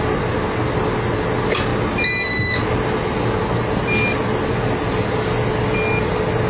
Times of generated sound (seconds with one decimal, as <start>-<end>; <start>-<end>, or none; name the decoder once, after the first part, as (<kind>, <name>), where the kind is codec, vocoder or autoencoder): none